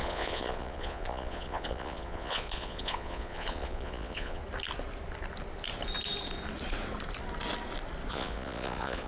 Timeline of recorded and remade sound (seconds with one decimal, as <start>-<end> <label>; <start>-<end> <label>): 0.0-4.4 remade; 4.4-8.1 recorded; 8.1-9.1 remade